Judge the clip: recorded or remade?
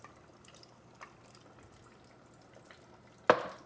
recorded